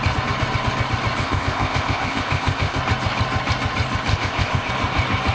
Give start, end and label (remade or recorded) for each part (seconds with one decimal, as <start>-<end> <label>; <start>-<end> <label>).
0.0-1.2 recorded; 1.2-2.8 remade; 2.8-4.1 recorded; 4.1-4.7 remade; 4.7-5.3 recorded